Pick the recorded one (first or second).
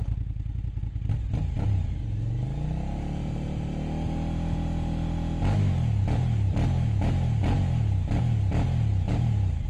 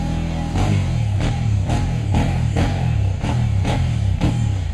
first